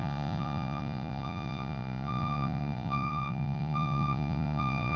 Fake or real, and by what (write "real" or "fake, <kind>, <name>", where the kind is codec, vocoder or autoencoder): fake, vocoder, Vocos